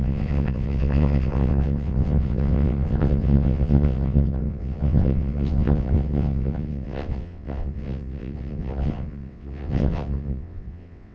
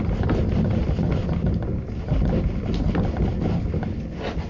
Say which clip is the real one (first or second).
second